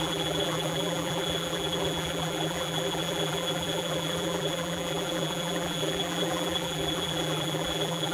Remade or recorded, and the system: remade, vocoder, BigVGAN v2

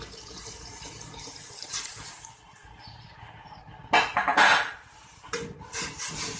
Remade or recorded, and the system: remade, vocoder, BigVGAN v2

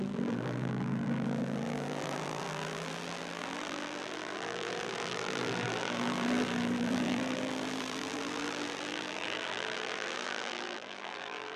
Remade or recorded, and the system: remade, vocoder, BigVGAN v2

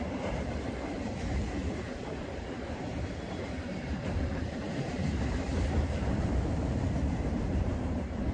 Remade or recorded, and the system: remade, vocoder, BigVGAN v2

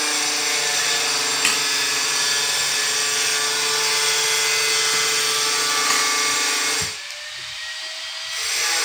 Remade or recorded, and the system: recorded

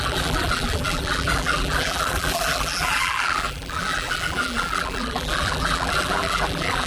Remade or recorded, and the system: remade, vocoder, BigVGAN v2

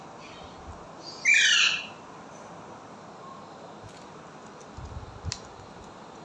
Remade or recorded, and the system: recorded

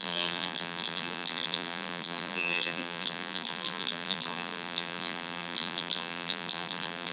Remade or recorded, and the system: remade, vocoder, BigVGAN v2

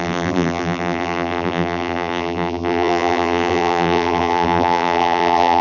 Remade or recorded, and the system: remade, vocoder, BigVGAN v2